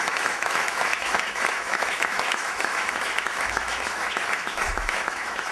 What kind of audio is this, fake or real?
fake